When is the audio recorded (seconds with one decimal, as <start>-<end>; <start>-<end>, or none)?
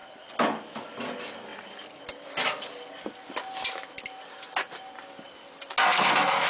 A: 0.0-6.5